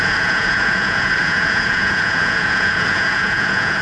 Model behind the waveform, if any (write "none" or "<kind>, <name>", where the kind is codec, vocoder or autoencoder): vocoder, Vocos